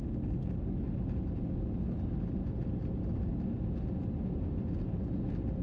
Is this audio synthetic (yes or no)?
no